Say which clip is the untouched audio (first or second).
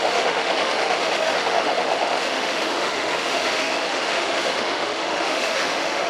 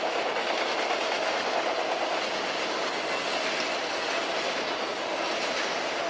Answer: second